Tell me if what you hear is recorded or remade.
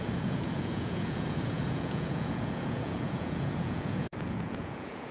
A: remade